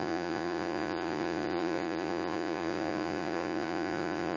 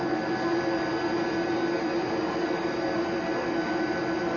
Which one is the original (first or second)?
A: second